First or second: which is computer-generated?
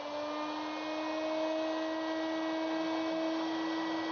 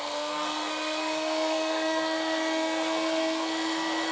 second